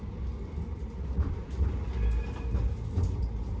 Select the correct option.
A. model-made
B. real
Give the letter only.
B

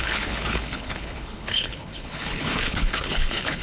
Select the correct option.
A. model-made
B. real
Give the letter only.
A